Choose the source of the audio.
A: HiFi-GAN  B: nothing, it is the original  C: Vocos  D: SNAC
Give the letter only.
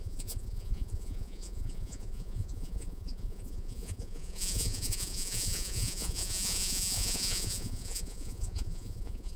C